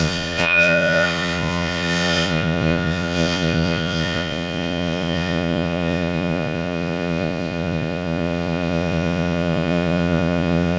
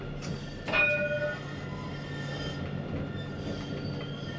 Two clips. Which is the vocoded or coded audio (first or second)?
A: first